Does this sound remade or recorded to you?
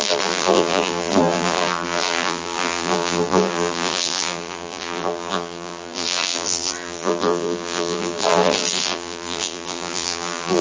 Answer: remade